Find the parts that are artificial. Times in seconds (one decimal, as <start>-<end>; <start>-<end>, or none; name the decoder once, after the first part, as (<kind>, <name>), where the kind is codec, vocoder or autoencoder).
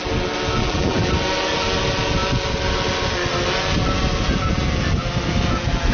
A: 0.6-1.1 (vocoder, BigVGAN v2)